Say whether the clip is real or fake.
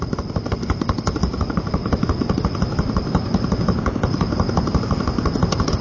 real